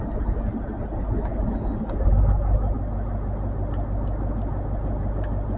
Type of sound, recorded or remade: recorded